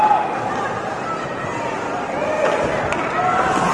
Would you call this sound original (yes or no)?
yes